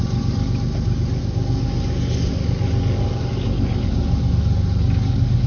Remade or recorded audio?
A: recorded